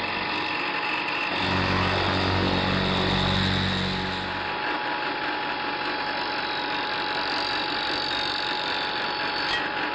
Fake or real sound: real